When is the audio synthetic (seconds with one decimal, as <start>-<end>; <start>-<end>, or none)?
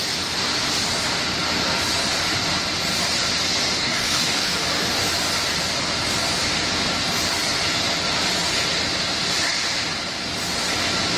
3.8-4.6